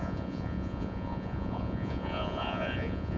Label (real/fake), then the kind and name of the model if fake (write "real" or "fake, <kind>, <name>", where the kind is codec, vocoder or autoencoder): fake, vocoder, Vocos